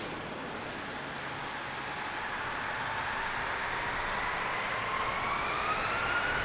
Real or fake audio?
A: real